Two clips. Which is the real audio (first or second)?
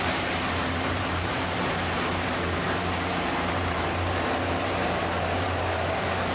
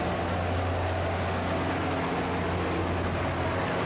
second